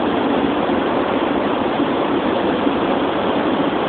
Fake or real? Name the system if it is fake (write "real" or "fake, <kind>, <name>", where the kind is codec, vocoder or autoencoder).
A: fake, vocoder, BigVGAN v2